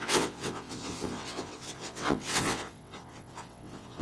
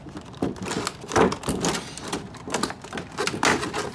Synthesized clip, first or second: first